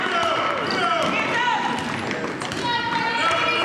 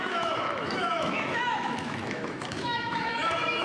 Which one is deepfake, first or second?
second